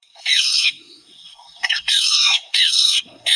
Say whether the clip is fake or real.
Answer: fake